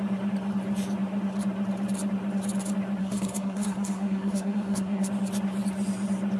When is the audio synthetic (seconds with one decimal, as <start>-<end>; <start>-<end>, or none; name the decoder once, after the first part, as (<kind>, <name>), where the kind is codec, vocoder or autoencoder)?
3.0-5.1 (codec, SNAC)

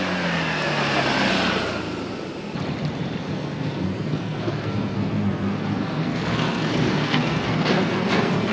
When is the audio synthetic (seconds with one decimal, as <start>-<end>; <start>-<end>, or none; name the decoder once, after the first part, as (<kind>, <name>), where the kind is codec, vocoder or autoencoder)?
3.2-8.5 (codec, SNAC)

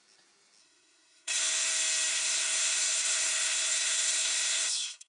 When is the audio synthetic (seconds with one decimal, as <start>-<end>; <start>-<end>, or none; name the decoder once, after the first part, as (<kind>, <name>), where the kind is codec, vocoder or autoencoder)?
0.6-1.4 (codec, SNAC); 2.1-5.1